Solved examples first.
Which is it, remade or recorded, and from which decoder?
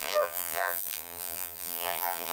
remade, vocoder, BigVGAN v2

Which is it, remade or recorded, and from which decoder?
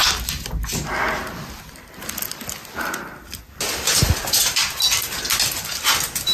recorded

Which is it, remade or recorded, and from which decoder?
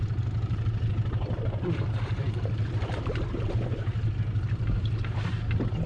remade, vocoder, BigVGAN v2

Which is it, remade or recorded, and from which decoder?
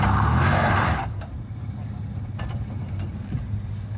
recorded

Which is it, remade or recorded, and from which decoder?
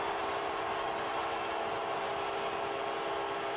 recorded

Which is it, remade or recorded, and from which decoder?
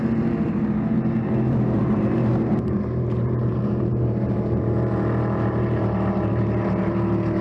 remade, vocoder, BigVGAN v2